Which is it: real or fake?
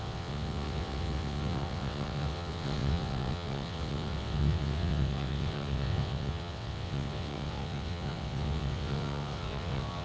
fake